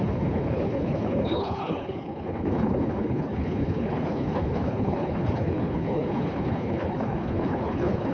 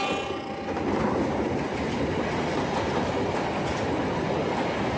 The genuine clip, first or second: second